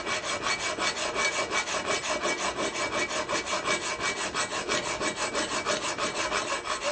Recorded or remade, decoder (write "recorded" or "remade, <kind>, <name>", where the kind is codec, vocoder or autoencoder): recorded